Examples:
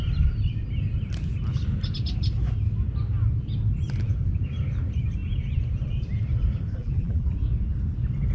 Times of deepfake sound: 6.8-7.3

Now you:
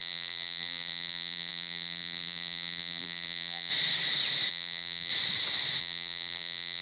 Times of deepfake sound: 0.0-3.7; 4.5-5.1; 5.8-6.8

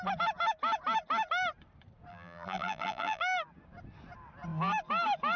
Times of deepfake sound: 2.1-3.2

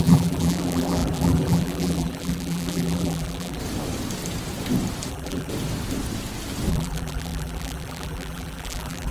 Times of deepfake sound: 0.0-3.6; 5.1-5.5; 6.7-9.1

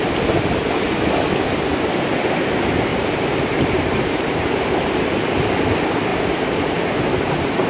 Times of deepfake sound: 2.9-5.3; 6.1-7.7

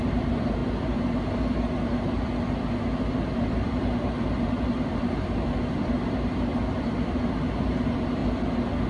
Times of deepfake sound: 0.0-0.6; 3.4-8.2